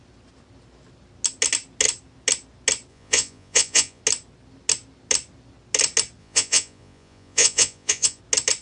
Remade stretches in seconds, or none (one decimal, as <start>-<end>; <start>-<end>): 2.9-4.0; 6.2-8.2